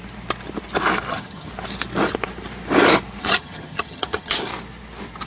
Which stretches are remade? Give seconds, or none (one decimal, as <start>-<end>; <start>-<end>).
1.1-1.5; 3.2-4.5